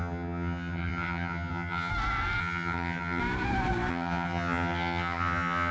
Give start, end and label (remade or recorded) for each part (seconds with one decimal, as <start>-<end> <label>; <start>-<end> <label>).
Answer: 0.0-1.9 remade; 1.9-2.4 recorded; 2.4-3.2 remade; 3.2-3.9 recorded; 3.9-5.7 remade